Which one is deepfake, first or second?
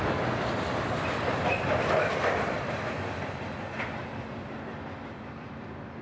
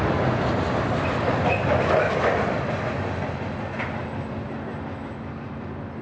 first